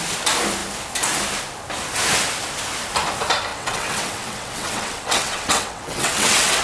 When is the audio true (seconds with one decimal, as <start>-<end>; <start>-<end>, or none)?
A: 0.0-3.5